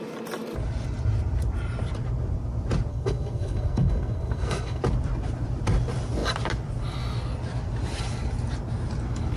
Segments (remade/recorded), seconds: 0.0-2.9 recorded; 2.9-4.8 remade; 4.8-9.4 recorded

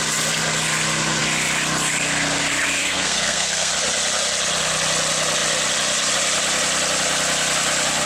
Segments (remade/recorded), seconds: 0.0-2.8 recorded; 2.8-3.7 remade; 3.7-8.1 recorded